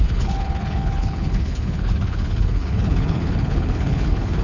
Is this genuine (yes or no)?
no